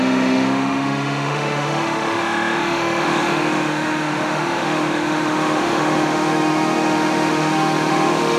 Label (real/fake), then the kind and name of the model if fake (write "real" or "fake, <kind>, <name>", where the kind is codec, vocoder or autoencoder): fake, autoencoder, DAC-VAE